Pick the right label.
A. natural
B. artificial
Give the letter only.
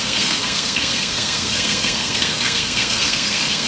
B